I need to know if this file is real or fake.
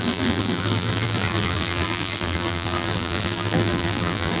fake